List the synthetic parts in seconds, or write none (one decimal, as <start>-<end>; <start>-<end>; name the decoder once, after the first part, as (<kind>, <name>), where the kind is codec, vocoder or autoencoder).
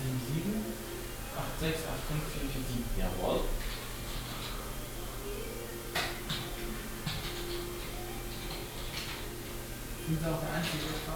1.3-2.8 (vocoder, BigVGAN v2); 8.6-9.5